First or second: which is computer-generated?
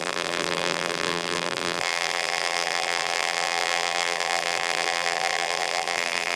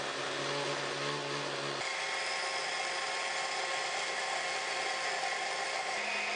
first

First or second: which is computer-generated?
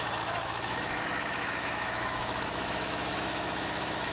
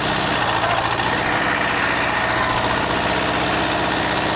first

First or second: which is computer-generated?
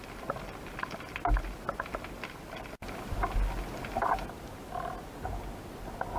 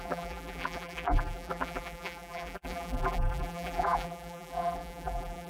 second